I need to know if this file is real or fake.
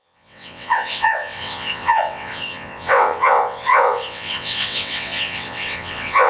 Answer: fake